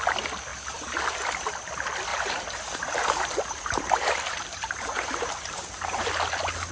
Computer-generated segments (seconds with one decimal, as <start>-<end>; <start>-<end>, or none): 0.5-1.0; 2.1-6.1